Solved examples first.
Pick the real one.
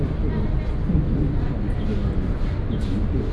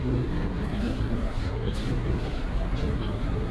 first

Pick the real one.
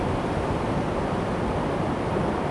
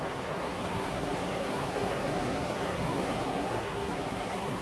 first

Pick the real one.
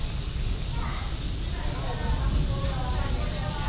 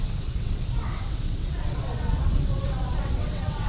first